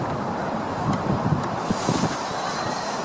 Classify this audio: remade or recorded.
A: remade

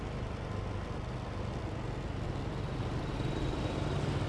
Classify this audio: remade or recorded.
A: recorded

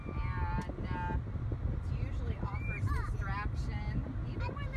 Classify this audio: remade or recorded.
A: recorded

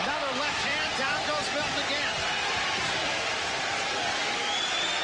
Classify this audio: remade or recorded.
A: recorded